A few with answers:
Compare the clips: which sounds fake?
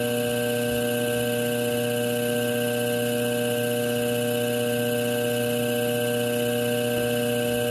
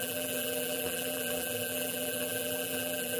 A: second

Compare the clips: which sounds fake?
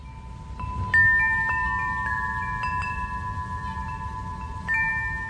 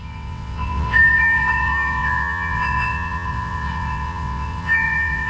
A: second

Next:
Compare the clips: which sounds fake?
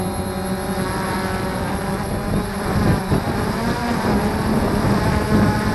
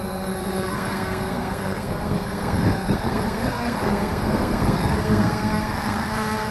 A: second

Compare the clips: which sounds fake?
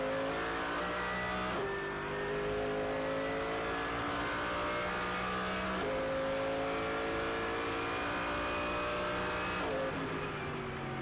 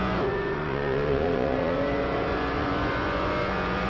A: second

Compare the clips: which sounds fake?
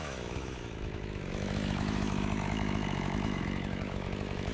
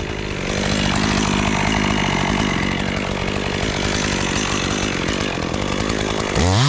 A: first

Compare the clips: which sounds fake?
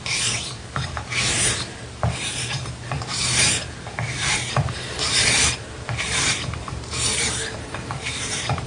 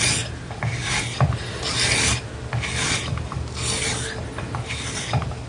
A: first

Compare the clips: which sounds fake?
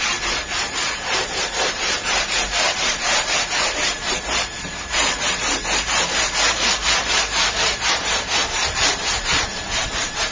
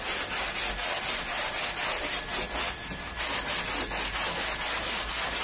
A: first